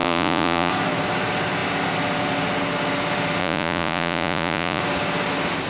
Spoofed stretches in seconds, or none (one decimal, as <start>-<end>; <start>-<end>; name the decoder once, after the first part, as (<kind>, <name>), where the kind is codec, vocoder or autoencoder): 0.0-0.7 (vocoder, Vocos); 3.4-4.8